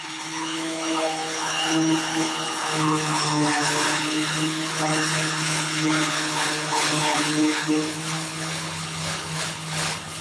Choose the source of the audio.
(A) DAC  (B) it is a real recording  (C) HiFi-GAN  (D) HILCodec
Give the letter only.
D